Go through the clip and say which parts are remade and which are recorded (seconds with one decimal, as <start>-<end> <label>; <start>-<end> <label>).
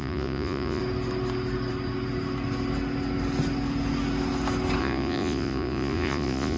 0.0-0.8 remade; 0.8-4.8 recorded; 4.8-6.6 remade